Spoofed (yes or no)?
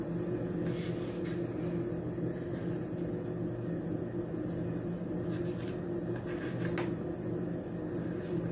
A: no